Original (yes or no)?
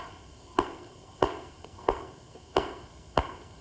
no